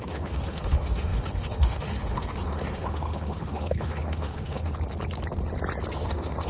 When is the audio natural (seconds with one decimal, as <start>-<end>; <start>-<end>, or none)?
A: 4.7-5.9